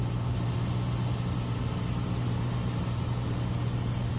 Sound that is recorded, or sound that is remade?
recorded